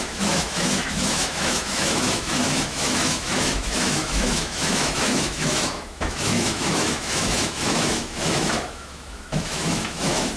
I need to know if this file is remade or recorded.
remade